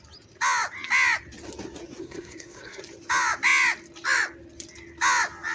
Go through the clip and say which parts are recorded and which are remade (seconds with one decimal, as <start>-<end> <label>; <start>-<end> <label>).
0.0-2.0 recorded; 2.0-2.8 remade; 2.8-5.5 recorded